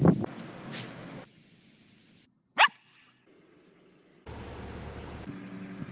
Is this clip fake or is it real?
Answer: real